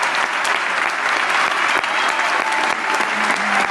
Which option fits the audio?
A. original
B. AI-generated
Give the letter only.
A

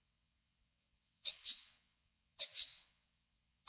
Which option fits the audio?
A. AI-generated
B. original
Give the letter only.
A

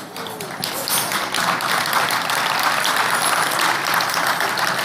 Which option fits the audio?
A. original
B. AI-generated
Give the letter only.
A